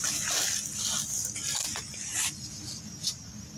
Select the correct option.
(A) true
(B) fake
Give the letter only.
A